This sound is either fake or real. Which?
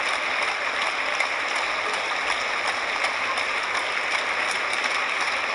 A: real